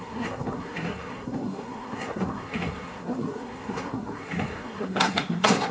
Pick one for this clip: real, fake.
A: fake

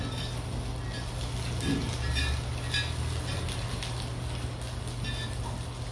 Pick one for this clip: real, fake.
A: real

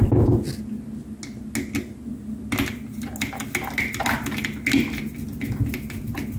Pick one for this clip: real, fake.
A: real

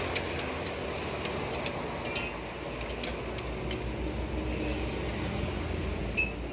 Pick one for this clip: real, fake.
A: real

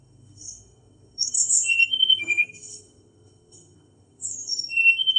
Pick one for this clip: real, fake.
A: fake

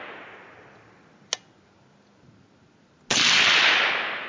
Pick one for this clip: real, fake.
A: real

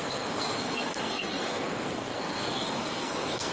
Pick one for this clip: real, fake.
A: fake